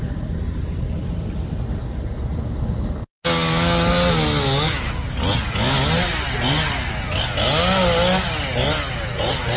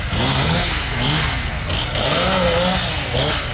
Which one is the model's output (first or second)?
second